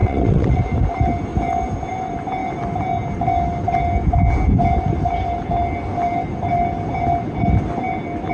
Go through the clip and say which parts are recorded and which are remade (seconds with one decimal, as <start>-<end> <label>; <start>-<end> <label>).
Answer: 0.0-0.6 remade; 0.6-8.3 recorded